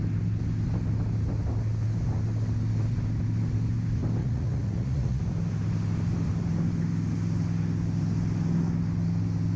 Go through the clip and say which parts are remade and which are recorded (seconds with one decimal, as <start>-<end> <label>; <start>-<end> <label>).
0.0-4.2 recorded; 4.2-5.2 remade; 5.2-9.6 recorded